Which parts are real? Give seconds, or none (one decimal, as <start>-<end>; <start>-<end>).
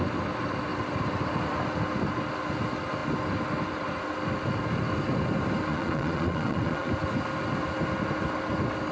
0.0-5.7; 6.9-8.9